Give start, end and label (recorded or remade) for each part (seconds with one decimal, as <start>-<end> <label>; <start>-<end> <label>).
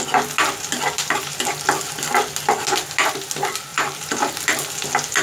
0.0-3.7 recorded; 3.7-4.2 remade; 4.2-5.2 recorded